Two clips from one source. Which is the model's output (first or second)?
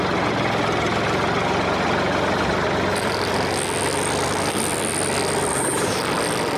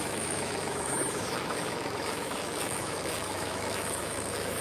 second